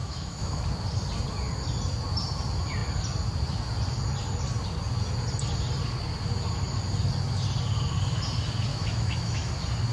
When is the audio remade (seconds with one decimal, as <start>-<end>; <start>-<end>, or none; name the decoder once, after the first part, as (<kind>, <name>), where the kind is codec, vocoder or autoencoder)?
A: 0.0-0.6 (autoencoder, DAC-VAE); 8.7-9.5